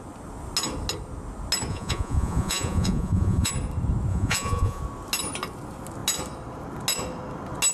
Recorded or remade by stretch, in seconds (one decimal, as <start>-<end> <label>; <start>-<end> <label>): 0.0-1.7 recorded; 1.7-3.5 remade; 3.5-4.1 recorded; 4.1-4.8 remade; 4.8-7.7 recorded